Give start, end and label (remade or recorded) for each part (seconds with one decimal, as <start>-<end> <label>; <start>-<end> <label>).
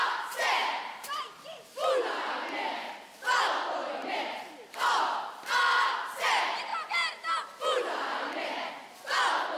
0.0-0.6 recorded; 0.6-1.6 remade; 1.6-4.0 recorded; 4.0-5.0 remade; 5.0-9.6 recorded